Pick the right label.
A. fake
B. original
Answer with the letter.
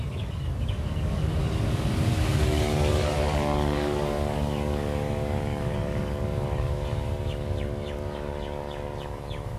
A